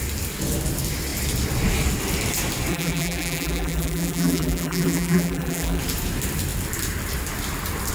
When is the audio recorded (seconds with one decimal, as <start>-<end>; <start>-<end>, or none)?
0.0-2.7; 5.8-7.9